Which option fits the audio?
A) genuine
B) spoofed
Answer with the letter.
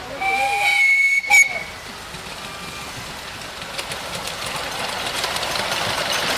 A